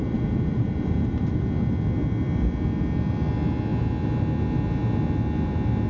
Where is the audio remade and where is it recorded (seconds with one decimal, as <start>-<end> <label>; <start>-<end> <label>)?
0.0-1.4 remade; 1.4-5.9 recorded